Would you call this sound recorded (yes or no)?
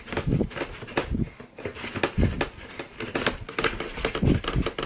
yes